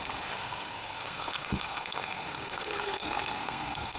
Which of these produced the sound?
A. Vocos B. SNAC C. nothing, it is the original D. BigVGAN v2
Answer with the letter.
B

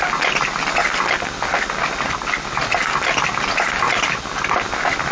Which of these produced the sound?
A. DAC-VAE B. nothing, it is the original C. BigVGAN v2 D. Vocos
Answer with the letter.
B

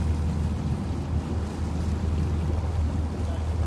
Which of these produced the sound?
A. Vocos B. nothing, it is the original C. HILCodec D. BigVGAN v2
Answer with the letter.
B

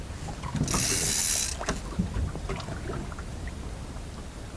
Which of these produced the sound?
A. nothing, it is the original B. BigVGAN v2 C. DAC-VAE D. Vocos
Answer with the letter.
A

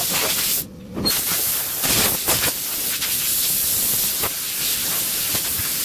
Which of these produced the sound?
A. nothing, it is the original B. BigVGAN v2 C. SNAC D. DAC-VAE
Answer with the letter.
B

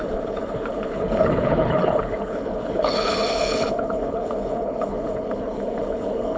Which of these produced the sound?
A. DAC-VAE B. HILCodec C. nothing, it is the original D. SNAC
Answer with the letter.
B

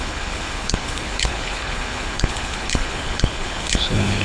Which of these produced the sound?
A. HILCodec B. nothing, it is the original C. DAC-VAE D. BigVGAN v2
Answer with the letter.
A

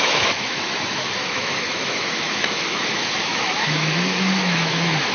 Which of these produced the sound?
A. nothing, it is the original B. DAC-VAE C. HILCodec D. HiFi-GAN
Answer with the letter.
B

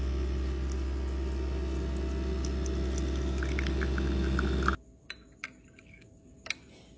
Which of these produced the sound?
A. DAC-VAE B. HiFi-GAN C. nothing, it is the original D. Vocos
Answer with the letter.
C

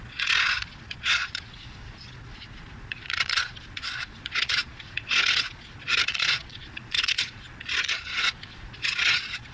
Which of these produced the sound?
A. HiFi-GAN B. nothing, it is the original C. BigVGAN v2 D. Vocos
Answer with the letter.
D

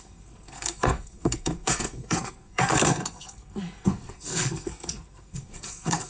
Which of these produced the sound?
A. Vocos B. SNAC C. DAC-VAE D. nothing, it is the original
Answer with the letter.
B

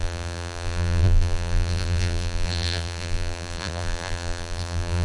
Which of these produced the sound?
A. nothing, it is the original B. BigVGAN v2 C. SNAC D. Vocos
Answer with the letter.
B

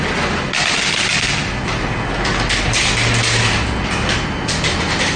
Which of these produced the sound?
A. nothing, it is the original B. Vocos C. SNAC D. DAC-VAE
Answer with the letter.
A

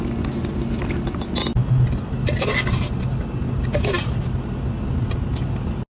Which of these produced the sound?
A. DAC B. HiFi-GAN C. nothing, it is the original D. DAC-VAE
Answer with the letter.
C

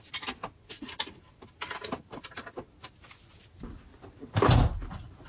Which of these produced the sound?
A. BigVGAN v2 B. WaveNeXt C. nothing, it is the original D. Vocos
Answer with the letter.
C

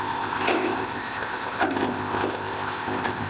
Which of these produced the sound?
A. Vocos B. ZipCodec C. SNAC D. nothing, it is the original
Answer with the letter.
B